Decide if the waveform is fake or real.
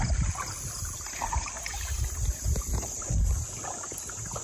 real